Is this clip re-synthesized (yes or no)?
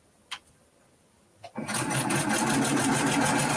no